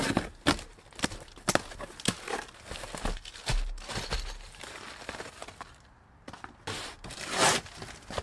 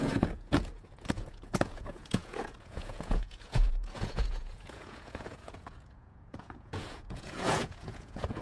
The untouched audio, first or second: first